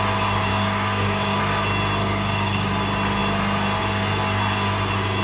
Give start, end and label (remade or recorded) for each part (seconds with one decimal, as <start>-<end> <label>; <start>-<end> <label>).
0.0-0.5 recorded; 0.5-1.4 remade; 1.4-2.0 recorded; 2.0-2.7 remade; 2.7-5.2 recorded